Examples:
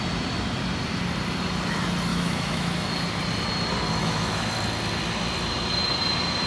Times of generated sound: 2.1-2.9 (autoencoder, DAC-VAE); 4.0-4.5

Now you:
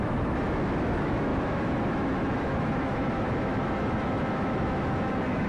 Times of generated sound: 0.0-5.5 (autoencoder, DAC-VAE)

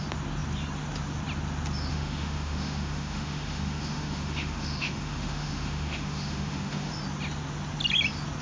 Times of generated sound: 1.9-6.9 (autoencoder, DAC-VAE)

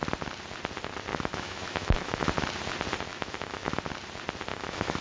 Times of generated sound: 1.1-2.3 (autoencoder, DAC-VAE); 3.1-3.8; 4.5-5.0

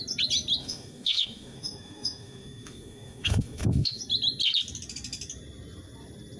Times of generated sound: 0.6-4.0 (autoencoder, DAC-VAE)